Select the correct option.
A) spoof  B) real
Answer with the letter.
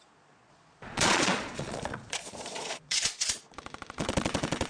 A